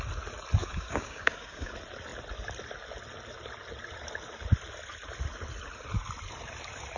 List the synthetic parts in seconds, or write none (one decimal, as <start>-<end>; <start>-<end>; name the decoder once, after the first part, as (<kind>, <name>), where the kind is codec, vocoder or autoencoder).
0.6-1.7 (codec, DAC)